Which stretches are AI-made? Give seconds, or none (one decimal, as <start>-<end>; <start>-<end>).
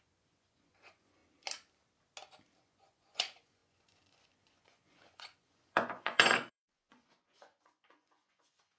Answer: 0.0-1.2; 2.6-8.8